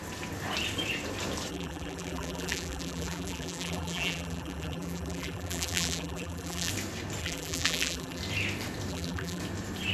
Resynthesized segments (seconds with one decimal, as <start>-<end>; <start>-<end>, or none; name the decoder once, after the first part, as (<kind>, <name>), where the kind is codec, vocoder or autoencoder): 1.5-6.7 (vocoder, BigVGAN v2); 7.2-8.2; 8.9-9.4